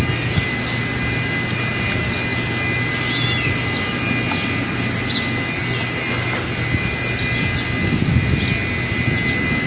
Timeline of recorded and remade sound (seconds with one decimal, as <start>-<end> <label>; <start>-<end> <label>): 0.0-9.7 recorded